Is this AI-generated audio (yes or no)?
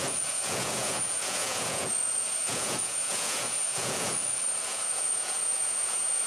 yes